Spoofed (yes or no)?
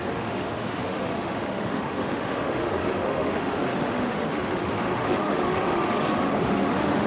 yes